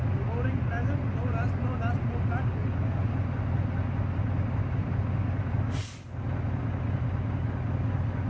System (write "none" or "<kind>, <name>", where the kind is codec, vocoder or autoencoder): none